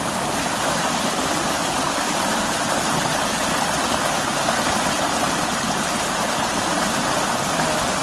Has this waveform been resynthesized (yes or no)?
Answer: no